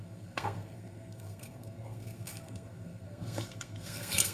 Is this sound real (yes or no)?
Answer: no